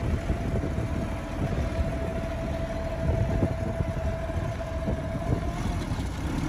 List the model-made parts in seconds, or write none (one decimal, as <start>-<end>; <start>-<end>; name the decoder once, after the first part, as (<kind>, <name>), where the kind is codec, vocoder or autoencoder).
none